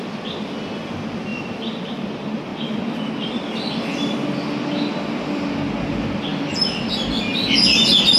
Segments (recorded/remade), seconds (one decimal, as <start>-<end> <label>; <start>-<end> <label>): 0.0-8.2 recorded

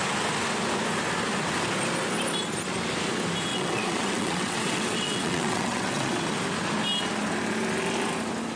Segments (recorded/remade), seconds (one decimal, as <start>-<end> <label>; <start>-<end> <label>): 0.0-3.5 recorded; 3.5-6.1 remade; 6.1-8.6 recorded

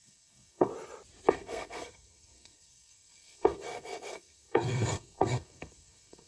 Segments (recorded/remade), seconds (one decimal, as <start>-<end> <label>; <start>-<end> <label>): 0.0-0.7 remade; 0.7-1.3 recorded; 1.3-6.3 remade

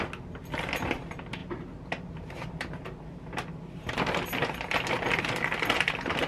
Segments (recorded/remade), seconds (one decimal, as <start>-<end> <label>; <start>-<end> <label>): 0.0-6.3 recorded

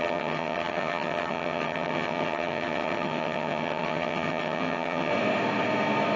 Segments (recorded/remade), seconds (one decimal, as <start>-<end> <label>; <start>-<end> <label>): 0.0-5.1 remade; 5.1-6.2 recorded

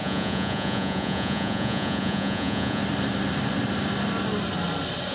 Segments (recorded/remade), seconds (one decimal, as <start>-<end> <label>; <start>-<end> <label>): 0.0-2.8 remade; 2.8-5.1 recorded

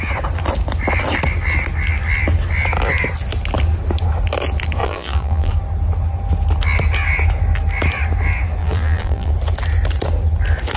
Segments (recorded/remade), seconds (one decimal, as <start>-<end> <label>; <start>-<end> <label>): 0.0-4.8 recorded; 4.8-5.5 remade; 5.5-8.6 recorded; 8.6-9.3 remade; 9.3-10.8 recorded